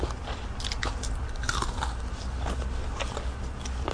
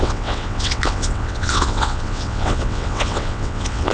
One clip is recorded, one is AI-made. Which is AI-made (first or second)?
second